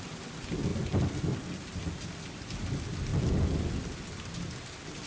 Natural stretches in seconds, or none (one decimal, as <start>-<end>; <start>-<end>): 0.0-5.1